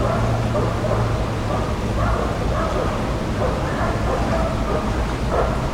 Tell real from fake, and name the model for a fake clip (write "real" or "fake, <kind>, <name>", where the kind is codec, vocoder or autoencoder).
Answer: real